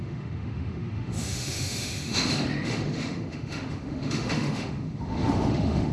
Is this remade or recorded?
remade